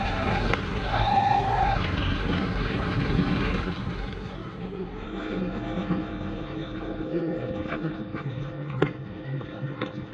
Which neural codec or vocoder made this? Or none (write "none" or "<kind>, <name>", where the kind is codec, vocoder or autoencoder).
codec, SNAC